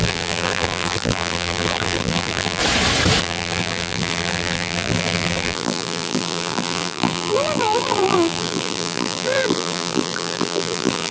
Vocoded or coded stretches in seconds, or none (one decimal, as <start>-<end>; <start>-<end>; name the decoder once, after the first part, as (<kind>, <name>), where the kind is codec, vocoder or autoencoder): 0.0-2.6 (vocoder, BigVGAN v2); 3.2-11.1